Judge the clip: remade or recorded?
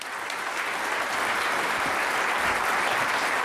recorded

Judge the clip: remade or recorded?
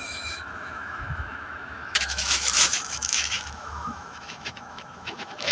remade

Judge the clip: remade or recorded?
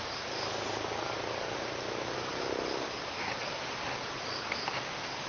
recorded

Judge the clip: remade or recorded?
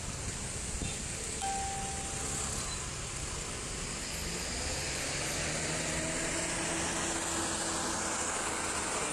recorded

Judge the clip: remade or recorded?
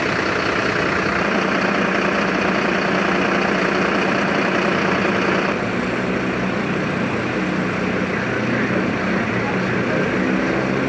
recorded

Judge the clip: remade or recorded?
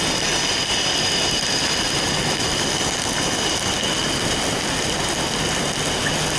recorded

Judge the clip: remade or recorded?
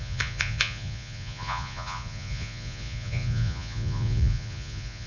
remade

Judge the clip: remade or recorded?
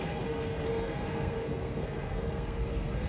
remade